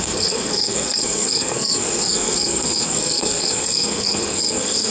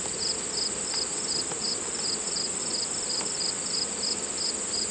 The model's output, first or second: first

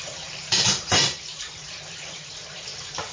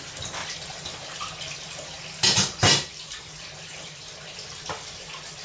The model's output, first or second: first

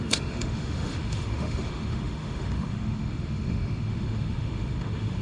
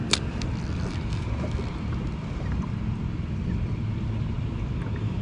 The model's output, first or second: first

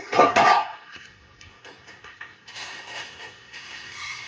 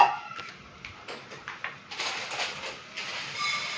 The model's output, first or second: first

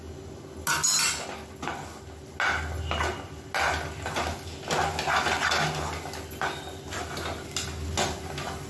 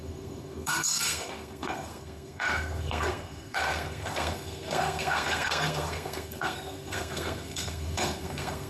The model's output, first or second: second